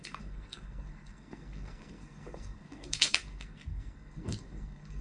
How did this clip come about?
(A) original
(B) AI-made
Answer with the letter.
B